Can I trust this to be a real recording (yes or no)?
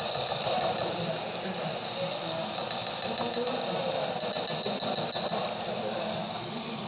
yes